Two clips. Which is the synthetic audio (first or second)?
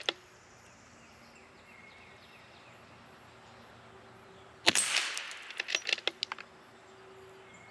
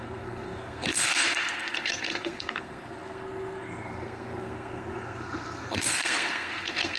second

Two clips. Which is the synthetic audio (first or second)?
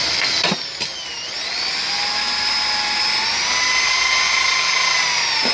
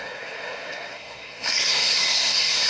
second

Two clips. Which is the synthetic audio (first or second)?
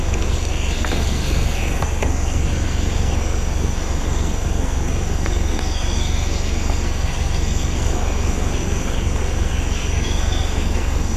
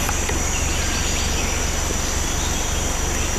first